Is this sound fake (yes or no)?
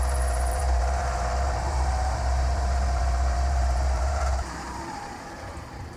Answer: yes